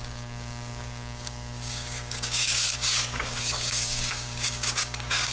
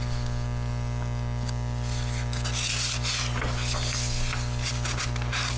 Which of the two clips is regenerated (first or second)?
first